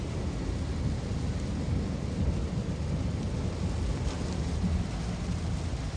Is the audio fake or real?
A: real